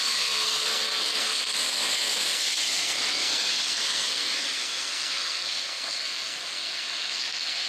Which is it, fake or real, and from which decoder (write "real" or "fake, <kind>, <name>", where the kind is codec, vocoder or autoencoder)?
fake, codec, SNAC